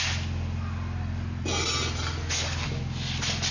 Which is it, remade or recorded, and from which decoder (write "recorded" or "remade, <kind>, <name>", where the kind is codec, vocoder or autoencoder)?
recorded